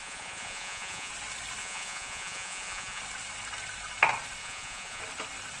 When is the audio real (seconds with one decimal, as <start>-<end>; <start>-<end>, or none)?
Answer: 1.1-1.6; 3.0-4.4; 5.0-5.6